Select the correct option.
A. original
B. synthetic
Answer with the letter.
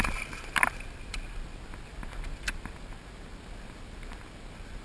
A